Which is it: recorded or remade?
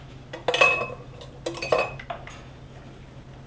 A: recorded